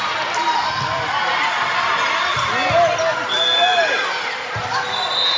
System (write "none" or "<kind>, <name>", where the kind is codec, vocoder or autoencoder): none